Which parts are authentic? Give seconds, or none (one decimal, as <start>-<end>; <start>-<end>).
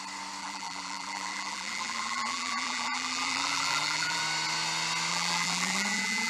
0.0-0.4; 4.2-5.1